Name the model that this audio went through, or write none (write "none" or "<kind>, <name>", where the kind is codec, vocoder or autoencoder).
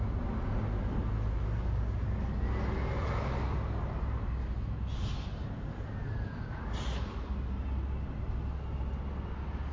none